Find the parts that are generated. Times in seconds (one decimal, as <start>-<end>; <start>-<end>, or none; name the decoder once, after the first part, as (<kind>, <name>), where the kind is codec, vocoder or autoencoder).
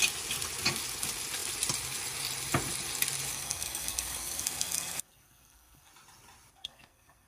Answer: 3.3-5.9 (codec, SNAC); 6.5-7.3